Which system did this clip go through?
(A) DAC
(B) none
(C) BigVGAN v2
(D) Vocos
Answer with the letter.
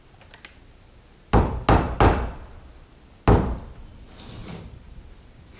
B